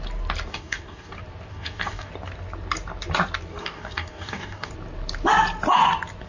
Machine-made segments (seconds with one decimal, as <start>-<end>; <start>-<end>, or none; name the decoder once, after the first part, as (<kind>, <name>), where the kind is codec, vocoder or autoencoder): 0.5-1.1 (codec, DAC); 1.5-2.1; 3.6-4.7